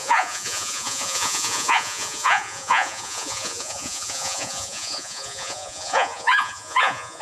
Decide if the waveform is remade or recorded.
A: remade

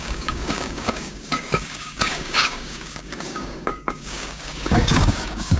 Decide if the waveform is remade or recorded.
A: remade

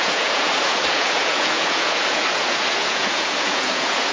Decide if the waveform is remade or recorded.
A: remade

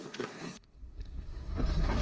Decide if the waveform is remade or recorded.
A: remade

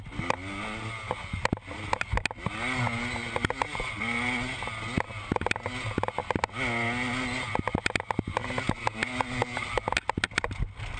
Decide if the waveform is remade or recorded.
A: recorded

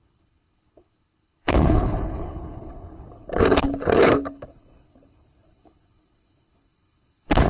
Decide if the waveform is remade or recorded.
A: remade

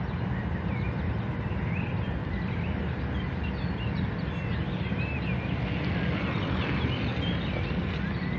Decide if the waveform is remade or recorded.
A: recorded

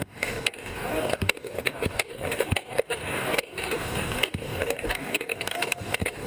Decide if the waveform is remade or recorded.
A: remade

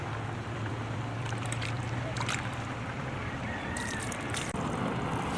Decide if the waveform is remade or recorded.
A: remade